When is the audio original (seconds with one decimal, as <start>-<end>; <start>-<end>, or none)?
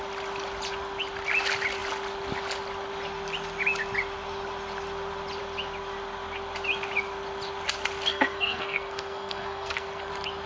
0.0-8.1; 10.1-10.5